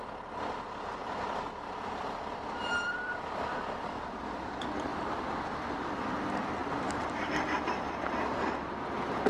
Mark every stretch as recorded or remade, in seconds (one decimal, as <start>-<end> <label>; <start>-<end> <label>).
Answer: 0.0-1.0 recorded; 1.0-4.3 remade; 4.3-4.9 recorded; 4.9-6.1 remade; 6.1-6.6 recorded; 6.6-7.3 remade; 7.3-9.3 recorded